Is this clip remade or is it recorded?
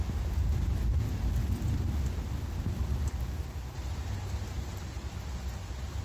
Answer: recorded